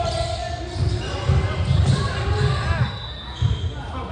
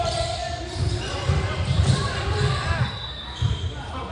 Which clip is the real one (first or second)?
first